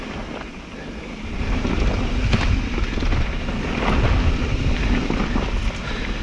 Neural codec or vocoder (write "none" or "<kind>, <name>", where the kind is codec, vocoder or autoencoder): none